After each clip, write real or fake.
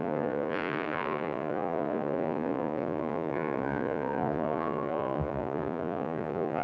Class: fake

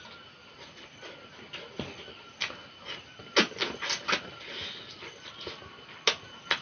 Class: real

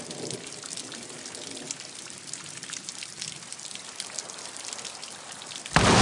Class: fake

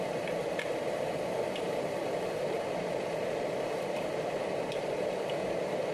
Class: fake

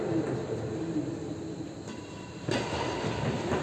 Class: real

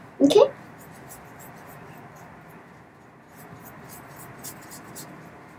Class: real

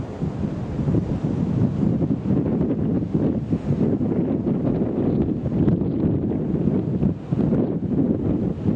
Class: real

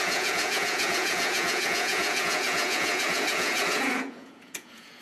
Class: fake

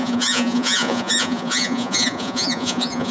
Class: fake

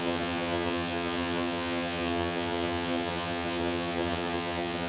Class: fake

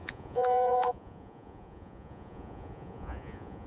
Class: fake